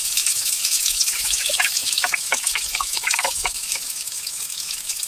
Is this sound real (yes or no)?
no